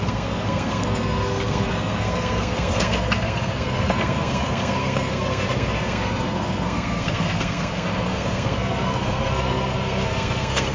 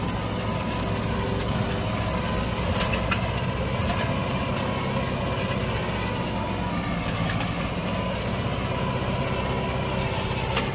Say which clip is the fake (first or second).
first